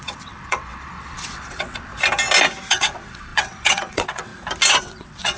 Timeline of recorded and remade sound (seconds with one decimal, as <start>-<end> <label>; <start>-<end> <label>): 0.0-1.9 remade; 1.9-2.7 recorded; 2.7-4.3 remade; 4.3-4.8 recorded; 4.8-5.4 remade